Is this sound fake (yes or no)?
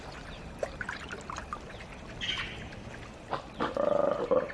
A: no